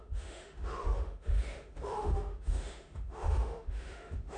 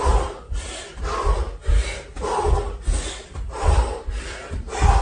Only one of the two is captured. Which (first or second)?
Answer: second